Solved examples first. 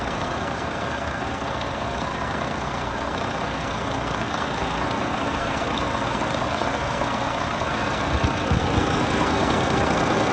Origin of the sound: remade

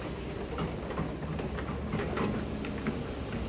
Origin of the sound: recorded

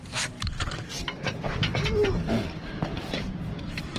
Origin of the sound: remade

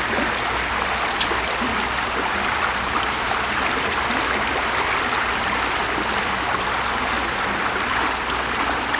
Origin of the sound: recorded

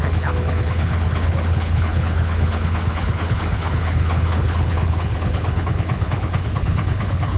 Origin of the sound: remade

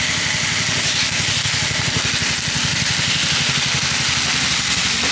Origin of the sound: recorded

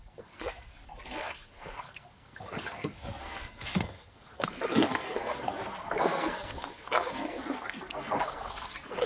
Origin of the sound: remade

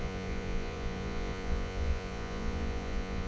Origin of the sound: remade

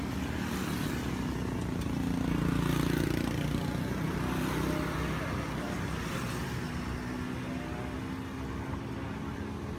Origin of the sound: recorded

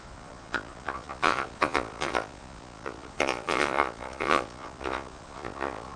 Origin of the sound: remade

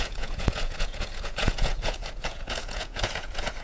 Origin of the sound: remade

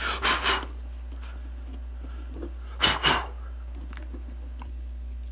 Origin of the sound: recorded